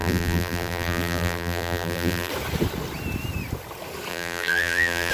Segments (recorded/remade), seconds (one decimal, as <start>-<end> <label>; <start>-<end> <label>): 0.0-2.3 remade; 2.3-4.1 recorded; 4.1-5.1 remade